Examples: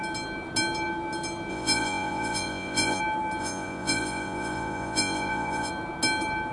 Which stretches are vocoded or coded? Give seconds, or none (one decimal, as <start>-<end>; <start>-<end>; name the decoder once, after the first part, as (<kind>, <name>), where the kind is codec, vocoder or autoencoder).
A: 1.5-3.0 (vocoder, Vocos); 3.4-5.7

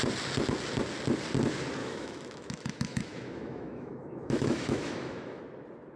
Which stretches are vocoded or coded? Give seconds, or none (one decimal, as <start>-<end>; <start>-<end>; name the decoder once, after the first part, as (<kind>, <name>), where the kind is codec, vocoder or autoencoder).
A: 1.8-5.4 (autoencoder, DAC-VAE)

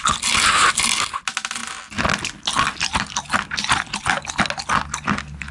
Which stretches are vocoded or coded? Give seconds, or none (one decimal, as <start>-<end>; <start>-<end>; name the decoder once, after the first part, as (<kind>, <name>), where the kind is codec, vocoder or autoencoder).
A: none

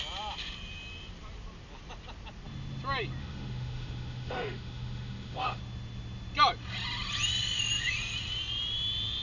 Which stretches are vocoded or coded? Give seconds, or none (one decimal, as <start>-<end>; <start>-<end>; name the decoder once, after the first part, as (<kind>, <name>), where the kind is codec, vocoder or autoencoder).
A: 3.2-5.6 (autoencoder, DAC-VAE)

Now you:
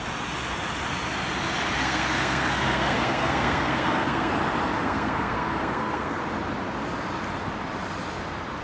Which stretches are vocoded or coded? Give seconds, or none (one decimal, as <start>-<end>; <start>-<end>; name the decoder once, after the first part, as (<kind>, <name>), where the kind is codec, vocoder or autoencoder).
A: 1.8-4.3 (codec, SNAC); 4.8-6.2

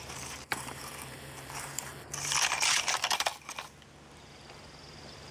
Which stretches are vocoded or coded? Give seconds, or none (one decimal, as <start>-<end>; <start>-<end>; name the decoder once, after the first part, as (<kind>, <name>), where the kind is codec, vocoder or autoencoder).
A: 0.0-1.9 (vocoder, BigVGAN v2); 2.6-3.3; 4.1-5.3

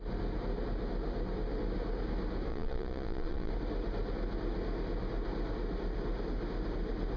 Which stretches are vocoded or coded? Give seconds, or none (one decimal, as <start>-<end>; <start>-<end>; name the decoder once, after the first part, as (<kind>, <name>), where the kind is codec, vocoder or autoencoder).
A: 2.5-3.5 (vocoder, Vocos)